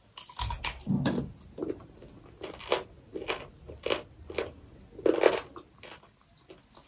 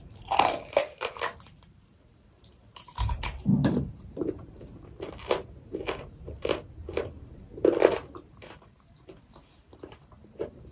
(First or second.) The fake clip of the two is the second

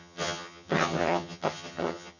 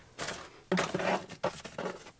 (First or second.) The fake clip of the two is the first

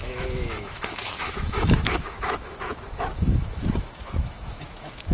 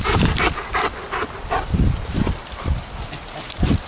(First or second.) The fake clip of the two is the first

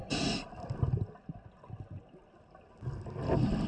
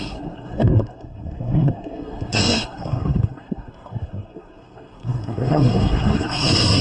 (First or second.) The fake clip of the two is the second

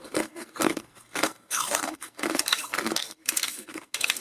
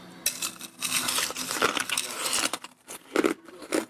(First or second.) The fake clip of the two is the first